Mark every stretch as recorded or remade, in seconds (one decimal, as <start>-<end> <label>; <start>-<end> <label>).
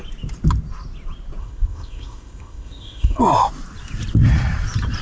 0.0-1.4 recorded; 1.4-3.2 remade; 3.2-5.0 recorded